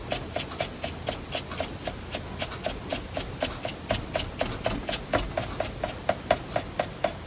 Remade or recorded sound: recorded